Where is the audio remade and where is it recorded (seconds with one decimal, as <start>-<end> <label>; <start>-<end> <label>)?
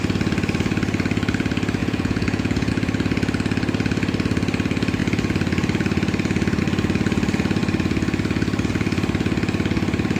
0.0-1.8 recorded; 1.8-2.7 remade; 2.7-10.2 recorded